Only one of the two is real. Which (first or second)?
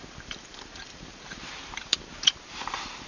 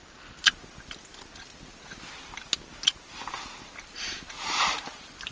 second